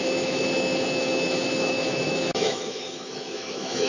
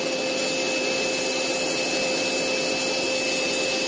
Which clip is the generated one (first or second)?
first